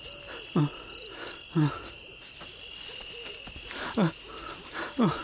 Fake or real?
real